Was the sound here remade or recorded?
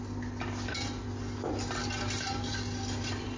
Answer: recorded